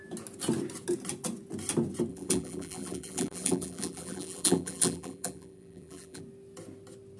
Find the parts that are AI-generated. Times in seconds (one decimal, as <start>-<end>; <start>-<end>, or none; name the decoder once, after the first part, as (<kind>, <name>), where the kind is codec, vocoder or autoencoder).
2.1-6.2 (vocoder, BigVGAN v2)